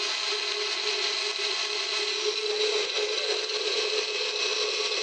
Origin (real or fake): real